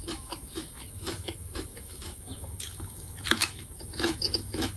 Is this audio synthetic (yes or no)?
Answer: yes